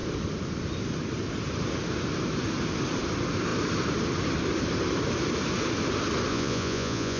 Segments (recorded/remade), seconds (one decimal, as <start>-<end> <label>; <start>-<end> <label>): 0.0-6.3 recorded; 6.3-7.2 remade